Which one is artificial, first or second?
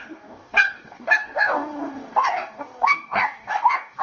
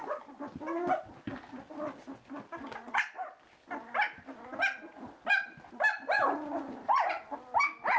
first